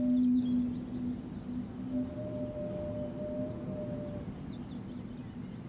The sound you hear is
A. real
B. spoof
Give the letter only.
A